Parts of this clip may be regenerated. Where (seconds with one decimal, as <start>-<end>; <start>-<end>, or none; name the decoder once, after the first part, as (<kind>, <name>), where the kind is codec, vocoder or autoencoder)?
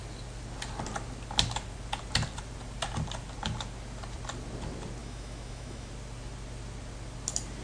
5.0-5.9 (autoencoder, DAC-VAE)